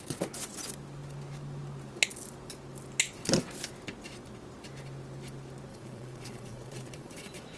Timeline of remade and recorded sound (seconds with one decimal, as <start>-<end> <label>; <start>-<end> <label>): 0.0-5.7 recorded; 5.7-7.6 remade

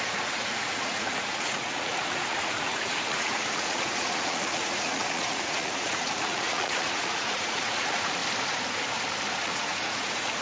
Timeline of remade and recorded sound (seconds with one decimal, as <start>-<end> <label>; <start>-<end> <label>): 0.0-8.2 remade; 8.2-9.3 recorded; 9.3-10.4 remade

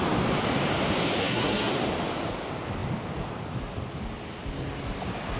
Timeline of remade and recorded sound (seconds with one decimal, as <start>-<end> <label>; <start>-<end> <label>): 0.0-1.2 recorded; 1.2-1.7 remade; 1.7-5.4 recorded